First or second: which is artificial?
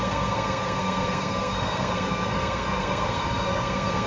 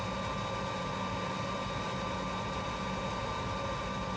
first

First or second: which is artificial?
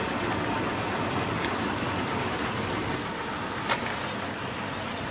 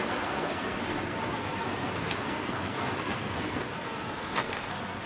second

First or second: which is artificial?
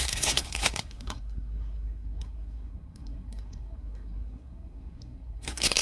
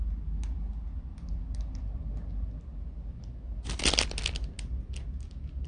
first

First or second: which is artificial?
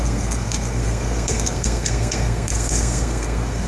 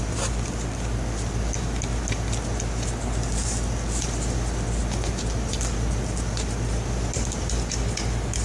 first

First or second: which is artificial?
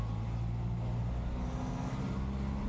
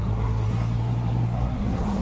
second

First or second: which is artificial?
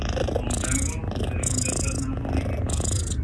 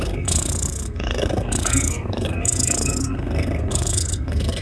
second